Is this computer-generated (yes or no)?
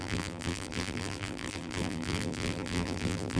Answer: yes